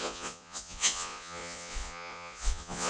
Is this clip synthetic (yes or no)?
yes